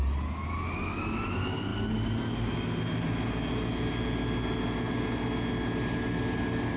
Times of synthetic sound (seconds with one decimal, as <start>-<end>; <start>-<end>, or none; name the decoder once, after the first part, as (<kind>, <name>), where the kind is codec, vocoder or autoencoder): none

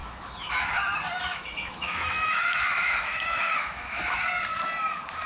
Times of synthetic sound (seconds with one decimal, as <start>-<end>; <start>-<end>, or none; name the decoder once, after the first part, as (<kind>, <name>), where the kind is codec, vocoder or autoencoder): 0.0-0.7 (autoencoder, DAC-VAE); 1.3-4.2